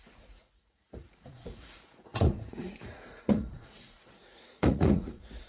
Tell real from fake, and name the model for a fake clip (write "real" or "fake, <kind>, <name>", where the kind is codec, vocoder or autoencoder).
fake, vocoder, Vocos